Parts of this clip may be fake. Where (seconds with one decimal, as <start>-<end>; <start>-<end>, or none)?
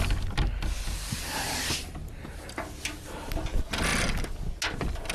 none